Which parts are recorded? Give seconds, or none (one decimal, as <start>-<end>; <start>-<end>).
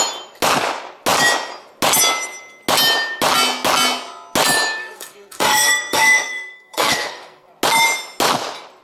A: 0.0-4.8; 7.5-8.8